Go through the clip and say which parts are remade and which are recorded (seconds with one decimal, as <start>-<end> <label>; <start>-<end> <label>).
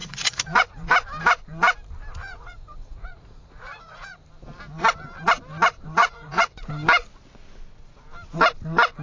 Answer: 0.0-0.9 remade; 0.9-2.2 recorded; 2.2-4.2 remade; 4.2-6.0 recorded; 6.0-6.7 remade; 6.7-9.0 recorded